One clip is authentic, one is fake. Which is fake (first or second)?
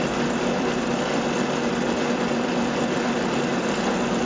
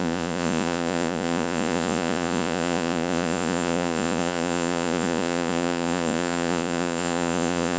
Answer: second